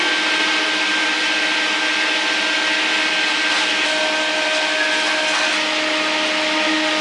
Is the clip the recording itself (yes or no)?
yes